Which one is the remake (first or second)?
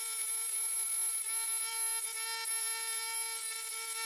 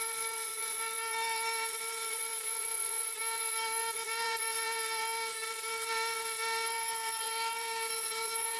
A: second